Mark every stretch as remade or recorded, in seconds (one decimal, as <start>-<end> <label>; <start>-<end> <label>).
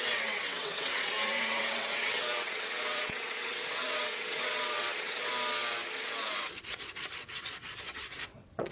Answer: 0.0-5.3 remade; 5.3-6.5 recorded; 6.5-8.7 remade